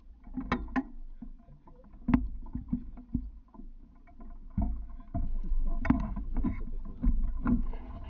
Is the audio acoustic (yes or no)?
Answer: yes